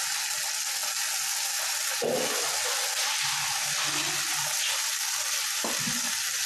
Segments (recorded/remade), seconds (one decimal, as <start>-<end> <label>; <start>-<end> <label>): 0.0-6.5 recorded